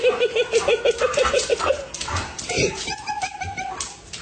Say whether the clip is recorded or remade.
recorded